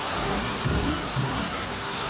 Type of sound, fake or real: fake